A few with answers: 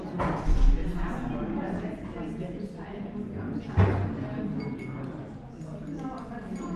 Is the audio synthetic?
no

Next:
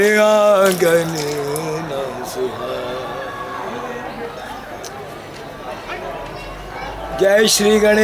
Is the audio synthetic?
no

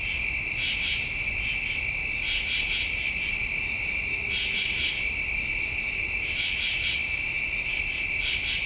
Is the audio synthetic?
no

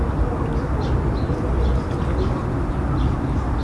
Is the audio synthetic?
no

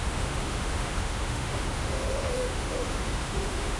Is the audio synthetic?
yes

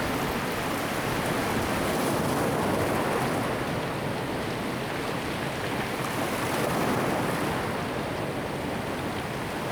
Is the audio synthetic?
no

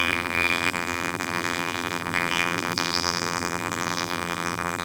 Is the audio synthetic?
yes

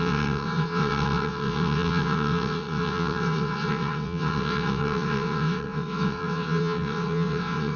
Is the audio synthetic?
yes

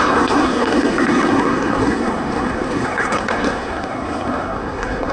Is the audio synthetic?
yes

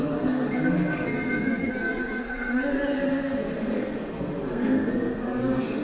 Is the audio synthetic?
yes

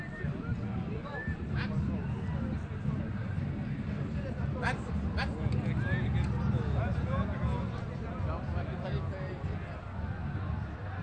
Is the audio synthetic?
no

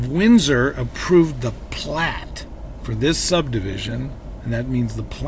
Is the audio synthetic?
no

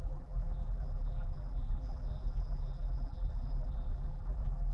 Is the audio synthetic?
yes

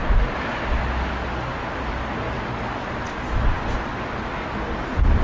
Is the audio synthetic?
no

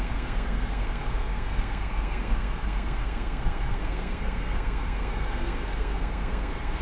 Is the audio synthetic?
yes